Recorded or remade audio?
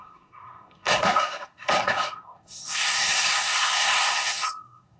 remade